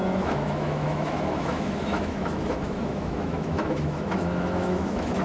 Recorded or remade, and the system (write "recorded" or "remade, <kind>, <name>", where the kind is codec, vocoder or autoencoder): remade, autoencoder, DAC-VAE